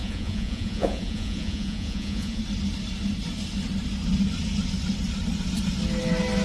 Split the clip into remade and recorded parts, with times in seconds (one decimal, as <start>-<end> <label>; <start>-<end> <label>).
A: 0.0-2.4 remade; 2.4-6.4 recorded